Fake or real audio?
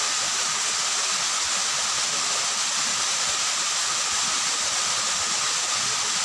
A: real